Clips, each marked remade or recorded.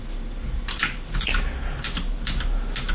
recorded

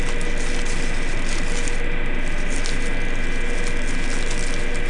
recorded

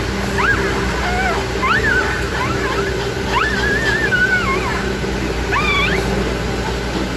recorded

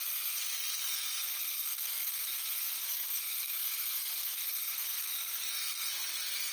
remade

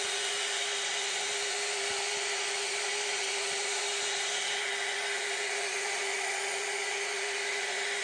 remade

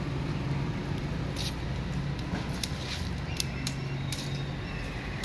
recorded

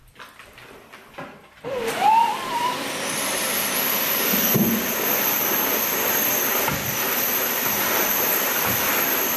remade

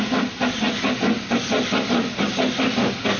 recorded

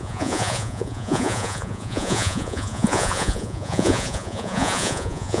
remade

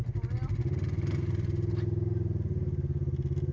recorded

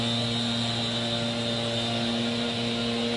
recorded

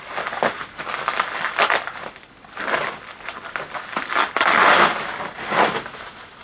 recorded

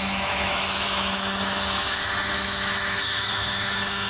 remade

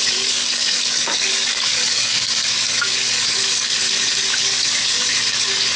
remade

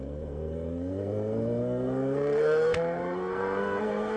remade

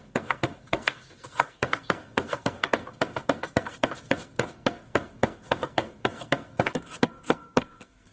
remade